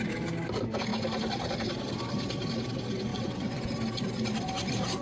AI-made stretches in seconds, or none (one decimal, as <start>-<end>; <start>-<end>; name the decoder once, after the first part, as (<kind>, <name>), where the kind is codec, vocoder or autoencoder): 3.1-3.7 (vocoder, WaveNeXt)